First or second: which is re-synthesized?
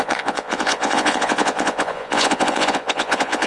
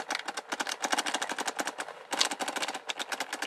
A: first